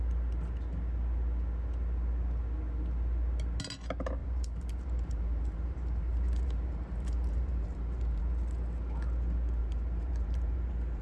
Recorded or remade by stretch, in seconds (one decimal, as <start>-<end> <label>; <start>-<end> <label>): 0.0-4.2 recorded; 4.2-8.2 remade; 8.2-9.6 recorded; 9.6-11.0 remade